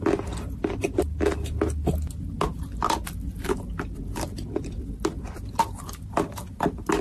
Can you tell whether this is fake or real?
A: real